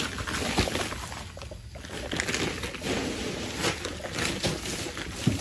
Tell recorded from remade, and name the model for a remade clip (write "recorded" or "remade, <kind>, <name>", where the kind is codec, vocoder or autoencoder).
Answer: recorded